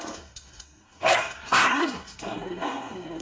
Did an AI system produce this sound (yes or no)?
yes